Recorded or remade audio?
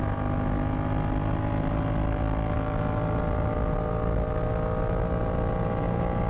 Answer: recorded